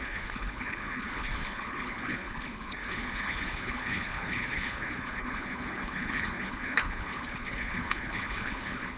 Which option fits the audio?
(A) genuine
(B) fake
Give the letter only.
B